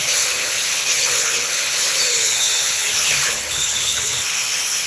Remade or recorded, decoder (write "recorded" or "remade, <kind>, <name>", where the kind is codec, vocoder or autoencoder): remade, codec, HILCodec